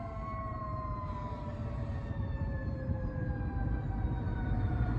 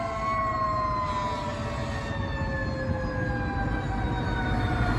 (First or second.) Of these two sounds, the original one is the second